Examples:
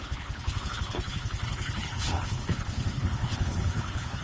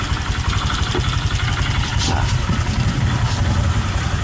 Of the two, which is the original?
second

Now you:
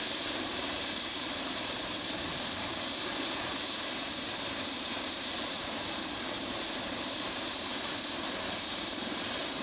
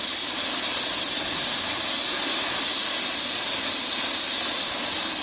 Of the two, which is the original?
second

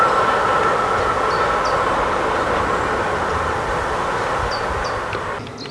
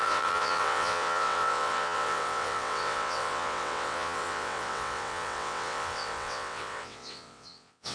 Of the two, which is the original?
first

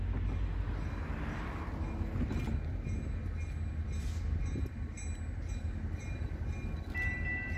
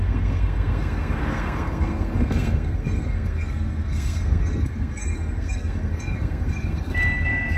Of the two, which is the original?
first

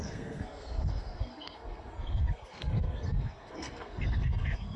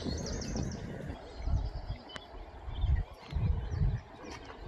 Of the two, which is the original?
second